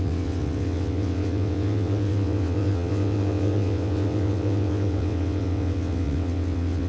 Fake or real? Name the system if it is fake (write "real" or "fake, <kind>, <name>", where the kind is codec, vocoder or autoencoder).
fake, vocoder, WaveNeXt